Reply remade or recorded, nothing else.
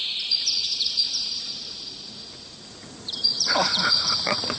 remade